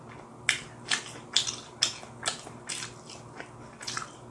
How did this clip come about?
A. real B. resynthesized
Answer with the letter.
A